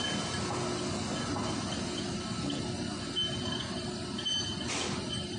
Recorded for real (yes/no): yes